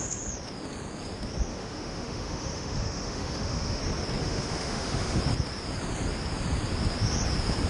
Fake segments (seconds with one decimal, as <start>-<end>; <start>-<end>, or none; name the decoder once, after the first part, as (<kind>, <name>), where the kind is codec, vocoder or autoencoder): 1.5-3.8 (autoencoder, DAC-VAE); 4.2-5.2